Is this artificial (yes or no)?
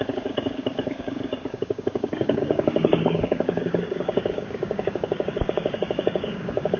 yes